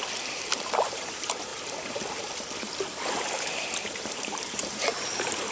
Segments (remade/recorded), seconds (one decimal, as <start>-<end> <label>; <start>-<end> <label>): 0.0-1.5 remade; 1.5-3.3 recorded; 3.3-5.5 remade